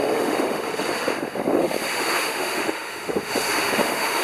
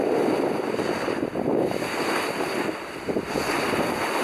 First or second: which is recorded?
second